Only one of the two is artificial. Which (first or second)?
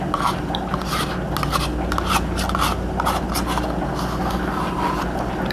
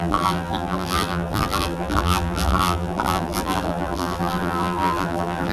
second